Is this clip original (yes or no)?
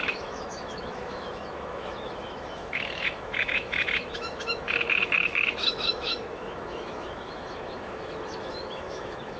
no